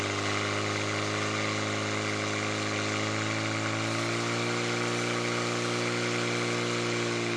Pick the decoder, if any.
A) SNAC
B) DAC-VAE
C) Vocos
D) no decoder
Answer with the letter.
D